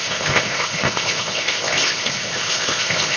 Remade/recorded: remade